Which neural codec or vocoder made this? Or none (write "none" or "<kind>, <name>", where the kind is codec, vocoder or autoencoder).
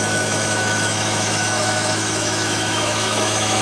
autoencoder, DAC-VAE